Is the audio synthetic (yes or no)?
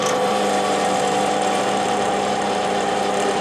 yes